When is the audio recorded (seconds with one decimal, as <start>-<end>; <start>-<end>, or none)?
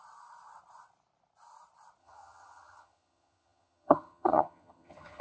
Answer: 0.0-2.0